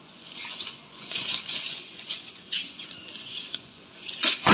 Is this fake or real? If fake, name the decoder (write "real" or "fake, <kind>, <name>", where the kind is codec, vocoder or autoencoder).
fake, vocoder, Vocos